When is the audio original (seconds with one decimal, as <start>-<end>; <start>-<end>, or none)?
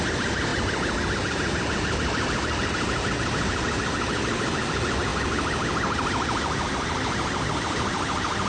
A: 0.0-8.5